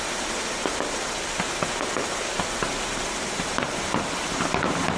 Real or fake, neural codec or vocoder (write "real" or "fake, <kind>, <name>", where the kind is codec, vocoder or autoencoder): real